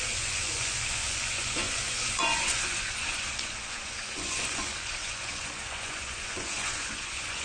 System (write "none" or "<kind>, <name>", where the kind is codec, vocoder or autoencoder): vocoder, Vocos